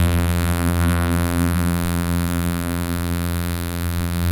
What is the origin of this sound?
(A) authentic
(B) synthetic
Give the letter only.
B